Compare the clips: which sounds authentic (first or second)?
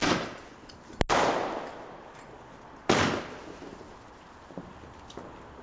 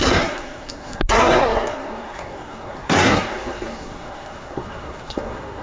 first